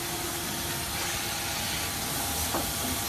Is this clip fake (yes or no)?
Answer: no